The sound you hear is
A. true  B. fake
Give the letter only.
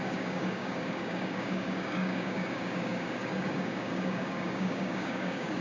B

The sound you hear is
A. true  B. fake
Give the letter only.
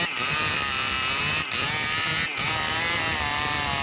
A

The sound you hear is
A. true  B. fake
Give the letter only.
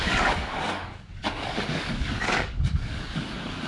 B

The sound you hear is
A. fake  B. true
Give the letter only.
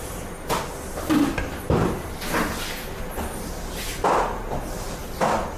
B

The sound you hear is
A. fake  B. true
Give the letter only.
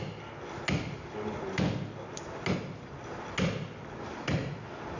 B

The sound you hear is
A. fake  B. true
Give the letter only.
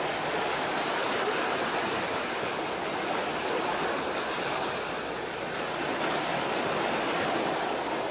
B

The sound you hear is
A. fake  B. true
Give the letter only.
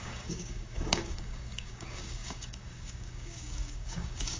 A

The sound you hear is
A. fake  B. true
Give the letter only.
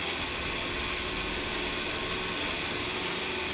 B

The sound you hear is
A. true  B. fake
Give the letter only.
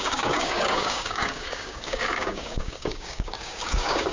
B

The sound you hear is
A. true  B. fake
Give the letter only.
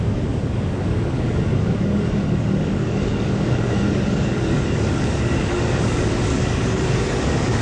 B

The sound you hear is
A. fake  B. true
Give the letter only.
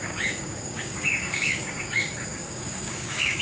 A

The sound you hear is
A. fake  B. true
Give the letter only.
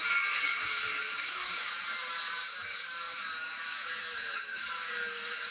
A